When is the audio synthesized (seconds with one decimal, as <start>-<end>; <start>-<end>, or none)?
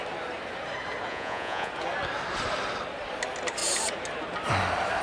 1.1-1.7